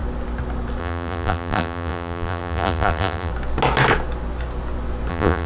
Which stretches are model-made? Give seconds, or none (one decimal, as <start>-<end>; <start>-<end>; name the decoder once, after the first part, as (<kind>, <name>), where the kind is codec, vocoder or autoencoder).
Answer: 0.8-3.3 (vocoder, BigVGAN v2); 5.1-5.5